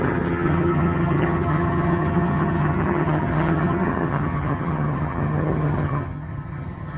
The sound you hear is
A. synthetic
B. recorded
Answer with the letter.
A